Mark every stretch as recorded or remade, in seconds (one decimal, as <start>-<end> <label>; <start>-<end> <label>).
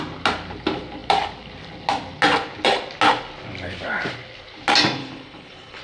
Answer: 0.0-5.0 recorded; 5.0-5.8 remade